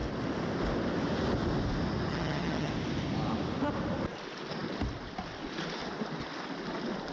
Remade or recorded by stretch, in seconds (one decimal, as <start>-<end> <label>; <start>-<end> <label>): 0.0-2.1 recorded; 2.1-2.7 remade; 2.7-7.1 recorded